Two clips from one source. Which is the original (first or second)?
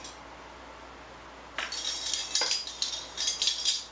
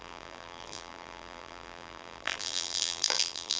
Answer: first